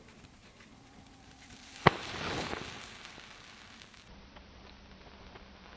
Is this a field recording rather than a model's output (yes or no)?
yes